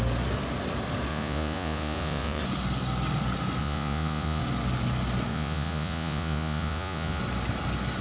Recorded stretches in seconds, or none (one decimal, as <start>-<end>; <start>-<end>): 0.0-1.1; 2.4-3.6; 4.4-5.3; 7.2-8.0